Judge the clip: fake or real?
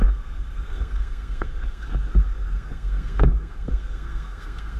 fake